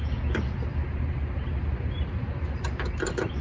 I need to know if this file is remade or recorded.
recorded